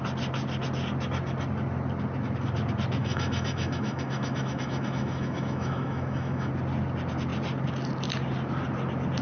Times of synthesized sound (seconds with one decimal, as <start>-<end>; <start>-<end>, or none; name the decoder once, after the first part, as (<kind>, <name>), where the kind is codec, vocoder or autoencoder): 3.0-6.5 (autoencoder, DAC-VAE)